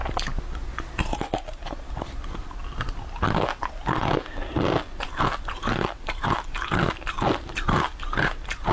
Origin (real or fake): real